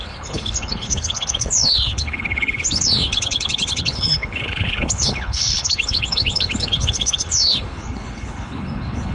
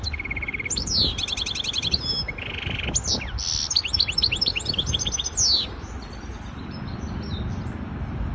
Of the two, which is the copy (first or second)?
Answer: first